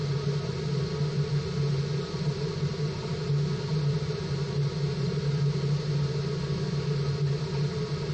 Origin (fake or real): real